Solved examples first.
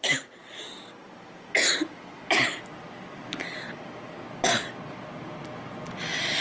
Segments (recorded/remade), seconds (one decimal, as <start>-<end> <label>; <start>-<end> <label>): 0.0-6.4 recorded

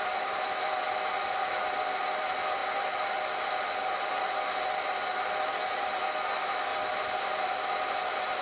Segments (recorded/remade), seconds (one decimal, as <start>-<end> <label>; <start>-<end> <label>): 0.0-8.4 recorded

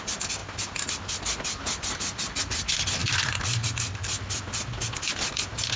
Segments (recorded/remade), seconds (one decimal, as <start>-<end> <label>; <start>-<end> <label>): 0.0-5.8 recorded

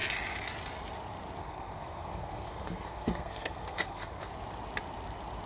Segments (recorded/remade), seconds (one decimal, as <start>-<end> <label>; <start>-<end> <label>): 0.0-1.4 recorded; 1.4-4.3 remade; 4.3-5.5 recorded

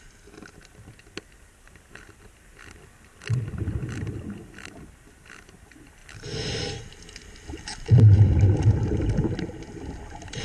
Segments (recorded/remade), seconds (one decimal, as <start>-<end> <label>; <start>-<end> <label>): 0.0-10.4 recorded

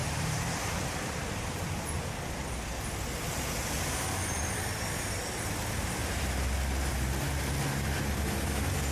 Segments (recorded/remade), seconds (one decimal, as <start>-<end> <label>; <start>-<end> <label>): 0.0-2.1 remade; 2.1-8.9 recorded